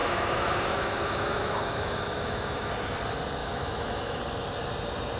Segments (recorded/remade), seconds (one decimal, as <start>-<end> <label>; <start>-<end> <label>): 0.0-2.7 remade; 2.7-3.4 recorded; 3.4-4.2 remade; 4.2-5.2 recorded